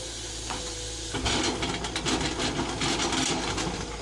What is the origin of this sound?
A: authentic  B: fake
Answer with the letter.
A